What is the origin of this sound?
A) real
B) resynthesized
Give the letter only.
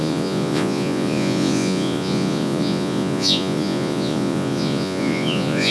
B